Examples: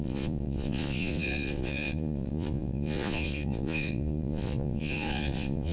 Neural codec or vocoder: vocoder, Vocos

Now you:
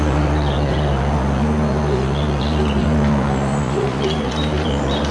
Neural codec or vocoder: vocoder, Vocos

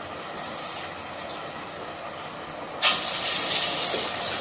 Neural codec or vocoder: none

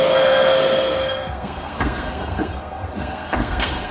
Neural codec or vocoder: codec, SNAC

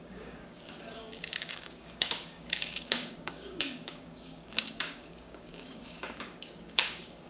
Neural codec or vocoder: codec, DAC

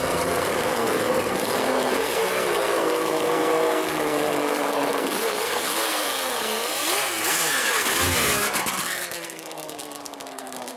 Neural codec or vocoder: codec, SNAC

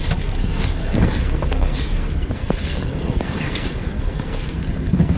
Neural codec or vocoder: codec, SNAC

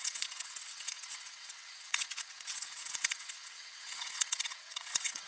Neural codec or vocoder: vocoder, WaveNeXt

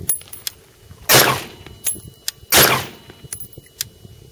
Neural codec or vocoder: none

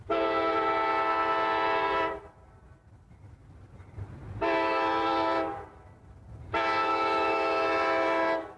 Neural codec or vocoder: none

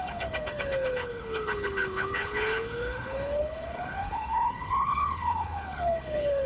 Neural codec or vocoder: codec, HILCodec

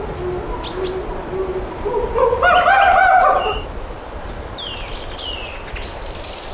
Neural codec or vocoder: none